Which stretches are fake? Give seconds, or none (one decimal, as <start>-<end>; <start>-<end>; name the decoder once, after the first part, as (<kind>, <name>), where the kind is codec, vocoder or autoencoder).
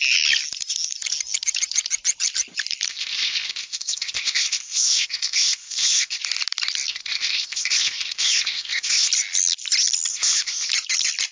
2.9-6.2 (codec, ZipCodec); 6.9-9.1; 10.1-10.7